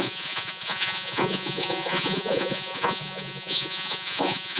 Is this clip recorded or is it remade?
remade